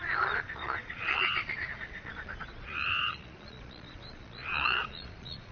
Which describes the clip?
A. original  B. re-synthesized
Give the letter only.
B